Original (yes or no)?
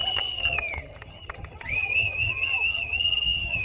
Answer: no